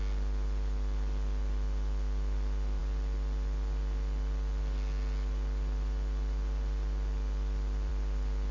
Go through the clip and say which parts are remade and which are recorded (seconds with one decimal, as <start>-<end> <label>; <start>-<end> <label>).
0.0-8.5 recorded